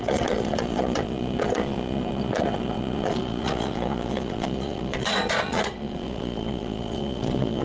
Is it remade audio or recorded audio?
remade